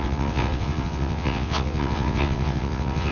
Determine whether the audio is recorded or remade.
remade